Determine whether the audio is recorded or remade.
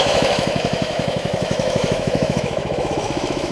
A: remade